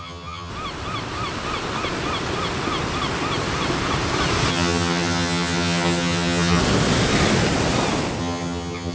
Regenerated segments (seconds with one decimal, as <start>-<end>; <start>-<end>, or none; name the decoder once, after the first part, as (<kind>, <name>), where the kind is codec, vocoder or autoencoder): 0.0-0.5 (vocoder, HiFi-GAN); 4.5-6.6; 8.2-8.9